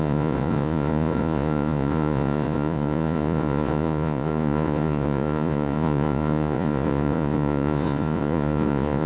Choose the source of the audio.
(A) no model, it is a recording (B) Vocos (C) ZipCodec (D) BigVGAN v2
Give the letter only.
B